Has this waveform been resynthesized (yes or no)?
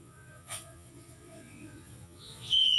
yes